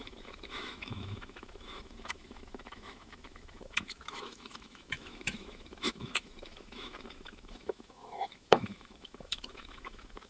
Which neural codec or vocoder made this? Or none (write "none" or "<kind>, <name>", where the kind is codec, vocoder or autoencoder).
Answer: autoencoder, DAC-VAE